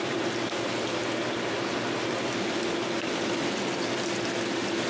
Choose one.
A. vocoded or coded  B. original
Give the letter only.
B